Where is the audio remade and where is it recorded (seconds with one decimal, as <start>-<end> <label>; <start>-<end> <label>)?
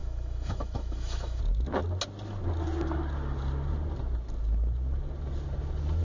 0.0-1.4 remade; 1.4-6.0 recorded